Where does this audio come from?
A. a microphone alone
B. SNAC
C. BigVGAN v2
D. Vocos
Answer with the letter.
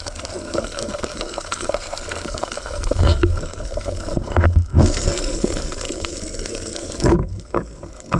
B